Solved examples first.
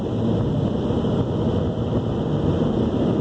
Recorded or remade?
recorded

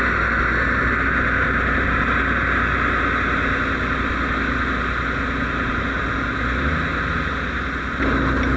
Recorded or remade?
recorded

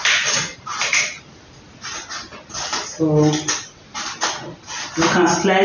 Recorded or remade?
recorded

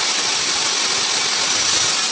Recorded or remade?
recorded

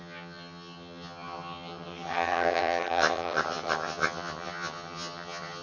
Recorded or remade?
remade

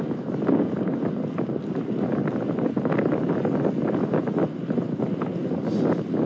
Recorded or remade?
recorded